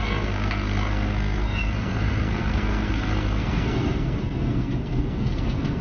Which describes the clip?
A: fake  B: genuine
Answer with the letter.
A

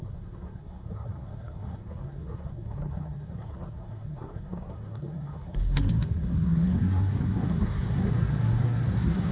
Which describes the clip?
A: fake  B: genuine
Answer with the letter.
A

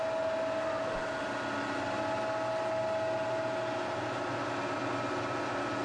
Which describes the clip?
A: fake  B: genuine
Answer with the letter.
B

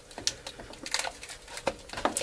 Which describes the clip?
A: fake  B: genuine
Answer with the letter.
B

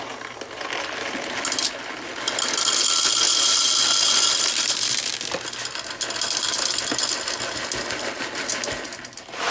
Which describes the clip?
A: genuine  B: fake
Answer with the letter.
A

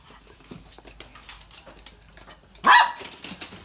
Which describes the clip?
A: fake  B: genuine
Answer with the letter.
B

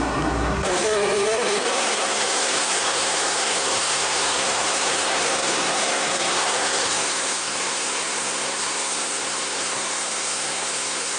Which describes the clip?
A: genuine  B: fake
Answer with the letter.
B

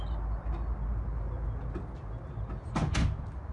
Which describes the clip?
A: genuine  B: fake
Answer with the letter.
A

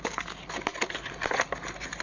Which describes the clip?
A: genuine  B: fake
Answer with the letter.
A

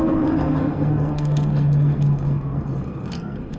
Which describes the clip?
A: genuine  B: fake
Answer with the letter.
B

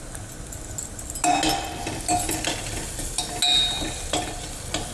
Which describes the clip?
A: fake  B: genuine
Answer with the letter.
B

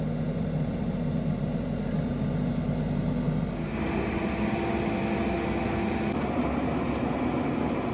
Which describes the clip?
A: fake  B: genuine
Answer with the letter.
B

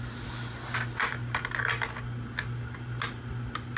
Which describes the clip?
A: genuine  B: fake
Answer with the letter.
A